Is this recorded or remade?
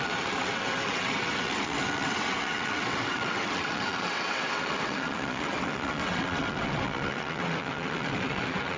remade